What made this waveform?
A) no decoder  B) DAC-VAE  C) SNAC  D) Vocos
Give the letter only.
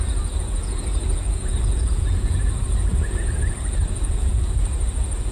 D